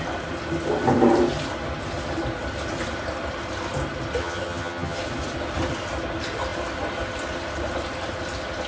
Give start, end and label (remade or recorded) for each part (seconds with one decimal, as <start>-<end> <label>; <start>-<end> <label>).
0.0-4.2 recorded; 4.2-5.0 remade; 5.0-8.7 recorded